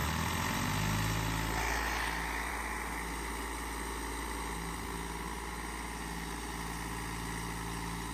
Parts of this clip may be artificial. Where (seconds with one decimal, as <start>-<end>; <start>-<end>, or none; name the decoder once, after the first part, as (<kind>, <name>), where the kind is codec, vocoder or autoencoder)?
none